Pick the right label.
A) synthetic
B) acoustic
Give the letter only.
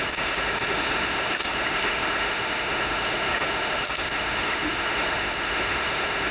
A